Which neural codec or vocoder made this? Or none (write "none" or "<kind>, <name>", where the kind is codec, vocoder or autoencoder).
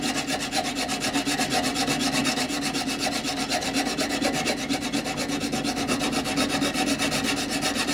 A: none